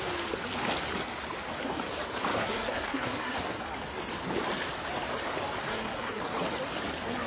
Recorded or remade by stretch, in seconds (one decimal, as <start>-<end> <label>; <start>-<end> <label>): 0.0-2.3 recorded; 2.3-3.6 remade; 3.6-5.7 recorded; 5.7-6.2 remade; 6.2-7.3 recorded